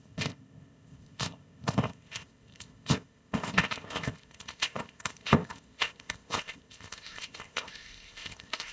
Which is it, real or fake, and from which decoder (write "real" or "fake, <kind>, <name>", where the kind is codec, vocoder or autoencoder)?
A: fake, codec, ZipCodec